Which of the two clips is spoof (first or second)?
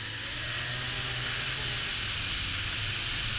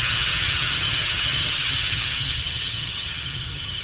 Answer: second